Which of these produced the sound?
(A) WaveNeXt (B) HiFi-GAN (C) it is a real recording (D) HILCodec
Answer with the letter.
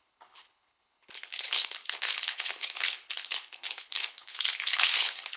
D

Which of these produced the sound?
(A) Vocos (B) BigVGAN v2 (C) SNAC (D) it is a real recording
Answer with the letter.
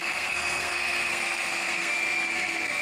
C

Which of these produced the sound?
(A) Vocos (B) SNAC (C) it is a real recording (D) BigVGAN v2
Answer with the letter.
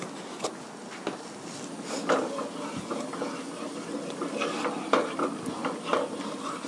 C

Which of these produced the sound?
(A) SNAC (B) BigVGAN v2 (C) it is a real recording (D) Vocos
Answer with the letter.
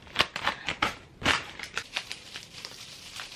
B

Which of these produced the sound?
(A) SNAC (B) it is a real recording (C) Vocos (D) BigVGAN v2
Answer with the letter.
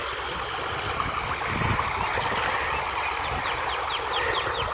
B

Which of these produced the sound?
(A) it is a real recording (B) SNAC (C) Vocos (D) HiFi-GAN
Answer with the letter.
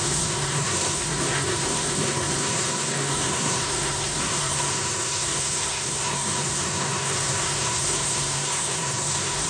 B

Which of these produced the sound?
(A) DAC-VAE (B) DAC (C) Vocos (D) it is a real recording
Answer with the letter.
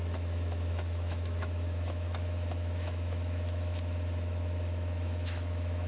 A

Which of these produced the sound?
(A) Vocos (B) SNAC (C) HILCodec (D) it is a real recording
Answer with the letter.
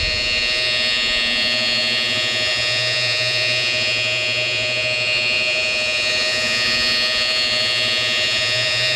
A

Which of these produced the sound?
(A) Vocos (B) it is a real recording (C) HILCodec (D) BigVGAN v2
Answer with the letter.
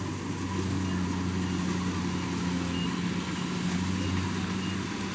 B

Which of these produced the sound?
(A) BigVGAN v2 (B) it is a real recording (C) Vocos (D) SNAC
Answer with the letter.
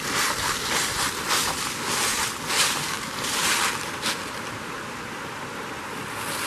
B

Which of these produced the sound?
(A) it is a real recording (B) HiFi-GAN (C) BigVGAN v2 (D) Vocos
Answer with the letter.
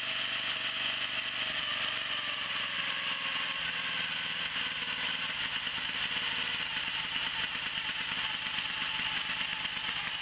A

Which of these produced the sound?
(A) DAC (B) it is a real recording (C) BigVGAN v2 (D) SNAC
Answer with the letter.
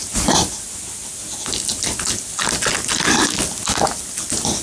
B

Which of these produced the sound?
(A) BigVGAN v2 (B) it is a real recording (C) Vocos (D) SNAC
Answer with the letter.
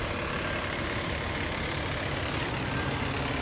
B